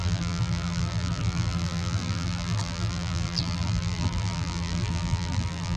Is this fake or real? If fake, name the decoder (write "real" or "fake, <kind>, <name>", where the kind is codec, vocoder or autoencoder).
fake, vocoder, BigVGAN v2